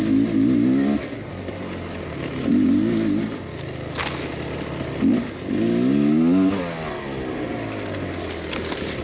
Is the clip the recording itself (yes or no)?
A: yes